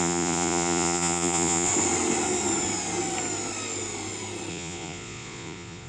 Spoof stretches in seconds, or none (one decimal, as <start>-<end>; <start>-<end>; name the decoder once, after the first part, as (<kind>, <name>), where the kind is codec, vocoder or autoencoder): 0.0-1.7 (vocoder, Vocos); 4.5-5.9